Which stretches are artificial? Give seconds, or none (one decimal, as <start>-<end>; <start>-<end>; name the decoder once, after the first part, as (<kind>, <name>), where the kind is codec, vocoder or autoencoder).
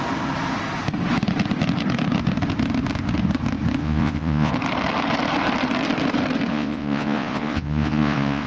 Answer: 3.8-4.5 (vocoder, Vocos); 6.5-8.5